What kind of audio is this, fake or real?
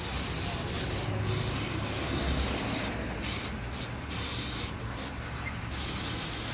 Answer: real